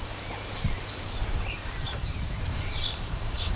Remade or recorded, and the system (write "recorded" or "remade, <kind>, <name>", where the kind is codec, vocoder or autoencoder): remade, vocoder, BigVGAN v2